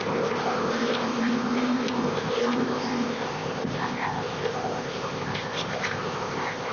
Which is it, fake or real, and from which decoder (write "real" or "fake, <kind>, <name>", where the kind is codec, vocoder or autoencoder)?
fake, codec, ZipCodec